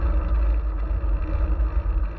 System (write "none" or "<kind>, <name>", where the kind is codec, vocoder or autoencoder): none